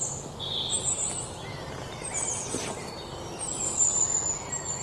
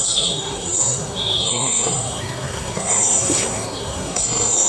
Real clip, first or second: first